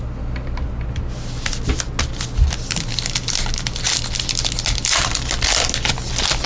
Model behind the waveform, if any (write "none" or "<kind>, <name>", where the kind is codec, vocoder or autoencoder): none